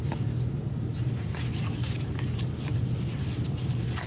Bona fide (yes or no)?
yes